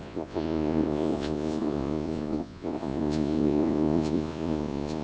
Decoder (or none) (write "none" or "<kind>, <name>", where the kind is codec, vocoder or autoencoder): vocoder, Vocos